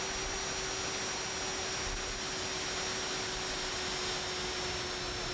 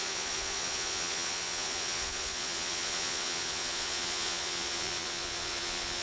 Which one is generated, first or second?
second